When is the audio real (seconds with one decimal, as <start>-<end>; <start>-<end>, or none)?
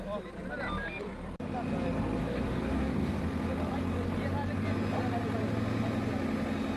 0.0-2.2; 3.2-6.8